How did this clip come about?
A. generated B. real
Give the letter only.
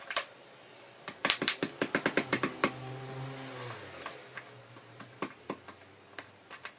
B